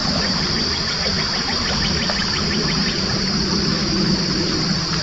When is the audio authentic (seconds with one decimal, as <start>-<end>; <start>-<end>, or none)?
0.0-3.7; 4.2-5.0